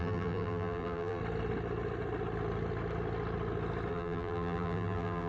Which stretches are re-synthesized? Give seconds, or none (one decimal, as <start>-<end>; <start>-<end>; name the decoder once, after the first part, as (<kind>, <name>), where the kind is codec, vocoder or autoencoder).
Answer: 0.0-1.2 (vocoder, BigVGAN v2); 3.9-5.3